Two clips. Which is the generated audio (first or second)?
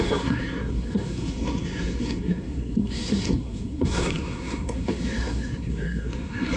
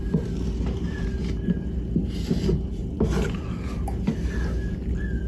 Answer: first